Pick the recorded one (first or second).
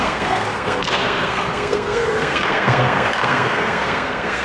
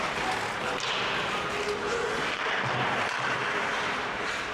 second